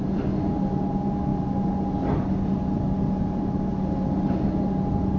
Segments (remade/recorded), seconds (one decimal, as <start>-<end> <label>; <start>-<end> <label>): 0.0-5.2 recorded